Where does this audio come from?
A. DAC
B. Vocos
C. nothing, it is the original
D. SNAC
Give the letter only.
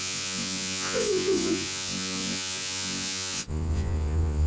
B